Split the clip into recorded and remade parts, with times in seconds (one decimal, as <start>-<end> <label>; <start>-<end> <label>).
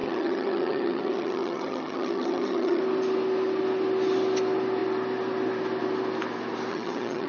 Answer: 0.0-2.8 remade; 2.8-6.7 recorded; 6.7-7.3 remade